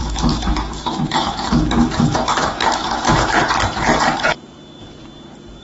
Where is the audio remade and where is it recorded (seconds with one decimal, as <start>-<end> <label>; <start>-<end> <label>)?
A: 0.0-3.4 remade; 3.4-5.6 recorded